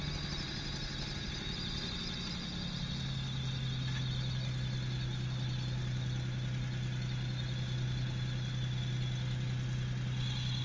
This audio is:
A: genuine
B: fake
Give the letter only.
A